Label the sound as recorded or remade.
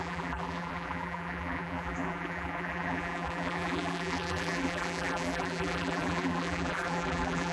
remade